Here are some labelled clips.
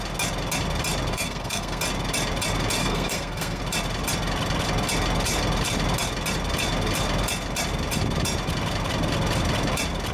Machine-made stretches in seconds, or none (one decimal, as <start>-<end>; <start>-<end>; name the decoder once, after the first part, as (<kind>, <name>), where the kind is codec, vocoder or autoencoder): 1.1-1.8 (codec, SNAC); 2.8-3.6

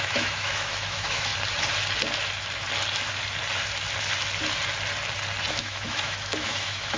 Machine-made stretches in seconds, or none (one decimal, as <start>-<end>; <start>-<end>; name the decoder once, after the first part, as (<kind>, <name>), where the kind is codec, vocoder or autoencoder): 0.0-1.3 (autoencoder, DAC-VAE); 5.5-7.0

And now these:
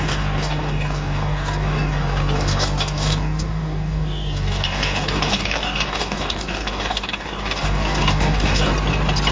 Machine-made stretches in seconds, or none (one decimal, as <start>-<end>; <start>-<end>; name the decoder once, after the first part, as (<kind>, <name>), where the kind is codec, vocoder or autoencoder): 0.0-8.7 (codec, DAC)

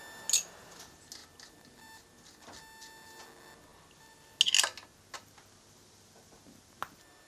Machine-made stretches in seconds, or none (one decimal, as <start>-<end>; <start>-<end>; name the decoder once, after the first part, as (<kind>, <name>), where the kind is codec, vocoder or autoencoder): none

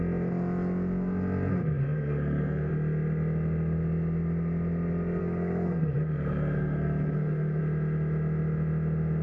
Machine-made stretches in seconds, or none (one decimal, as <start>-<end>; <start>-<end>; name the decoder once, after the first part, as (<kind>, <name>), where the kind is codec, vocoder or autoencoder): 1.5-2.7 (codec, SNAC); 5.2-7.6

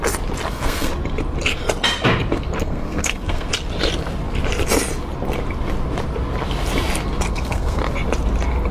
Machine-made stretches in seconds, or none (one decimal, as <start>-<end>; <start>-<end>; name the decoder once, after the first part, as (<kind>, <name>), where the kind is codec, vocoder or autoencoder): 0.5-0.9 (codec, SNAC); 2.6-3.5; 7.3-7.8

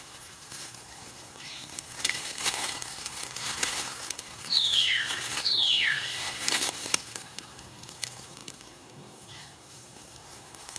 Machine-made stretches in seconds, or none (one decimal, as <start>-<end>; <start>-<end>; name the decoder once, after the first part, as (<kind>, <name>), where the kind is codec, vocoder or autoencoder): 0.0-10.8 (codec, SNAC)